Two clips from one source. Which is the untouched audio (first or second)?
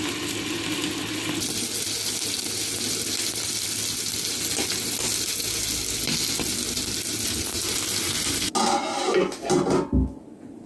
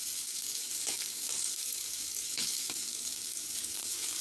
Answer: first